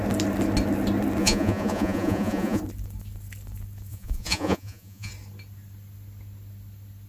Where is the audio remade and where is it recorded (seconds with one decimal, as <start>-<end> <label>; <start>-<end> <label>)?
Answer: 0.0-1.2 recorded; 1.2-2.6 remade; 2.6-3.9 recorded; 3.9-5.1 remade; 5.1-7.1 recorded